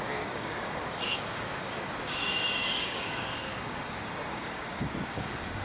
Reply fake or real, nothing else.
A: fake